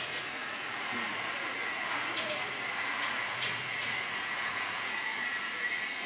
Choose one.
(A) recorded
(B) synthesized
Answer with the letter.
B